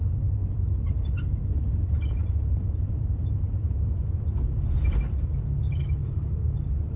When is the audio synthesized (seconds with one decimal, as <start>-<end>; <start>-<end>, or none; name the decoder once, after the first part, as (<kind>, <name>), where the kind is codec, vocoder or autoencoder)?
0.4-1.3 (vocoder, BigVGAN v2); 2.2-3.3; 6.0-7.0